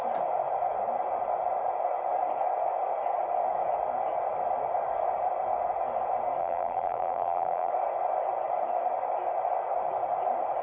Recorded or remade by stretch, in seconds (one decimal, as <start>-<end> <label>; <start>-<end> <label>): 0.0-6.4 recorded; 6.4-7.7 remade; 7.7-10.6 recorded